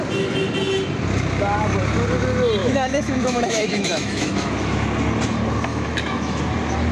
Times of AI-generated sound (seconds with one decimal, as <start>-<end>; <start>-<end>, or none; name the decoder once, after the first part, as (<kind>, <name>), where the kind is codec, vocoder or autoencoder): 2.6-4.3 (autoencoder, DAC-VAE); 5.7-6.4